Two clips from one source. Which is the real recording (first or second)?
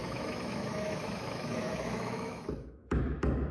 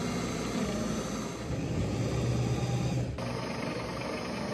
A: second